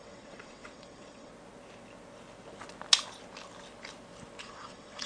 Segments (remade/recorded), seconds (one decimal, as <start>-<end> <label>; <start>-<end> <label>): 0.0-1.3 remade; 1.3-4.4 recorded; 4.4-5.1 remade